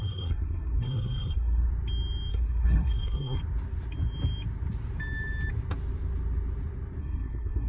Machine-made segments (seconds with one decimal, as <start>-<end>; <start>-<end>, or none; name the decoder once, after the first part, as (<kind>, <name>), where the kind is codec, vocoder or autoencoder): 0.0-1.7 (codec, SNAC); 2.3-3.4; 7.0-7.7